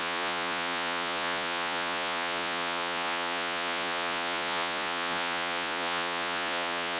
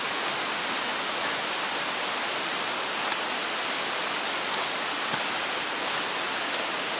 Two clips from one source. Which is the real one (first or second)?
second